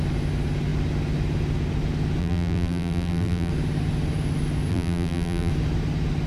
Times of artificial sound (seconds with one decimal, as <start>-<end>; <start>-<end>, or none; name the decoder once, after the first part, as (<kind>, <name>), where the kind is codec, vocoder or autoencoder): 2.2-3.5 (vocoder, BigVGAN v2); 4.7-5.5